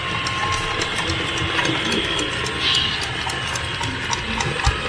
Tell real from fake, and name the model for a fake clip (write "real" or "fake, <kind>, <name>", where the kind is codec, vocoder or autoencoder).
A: real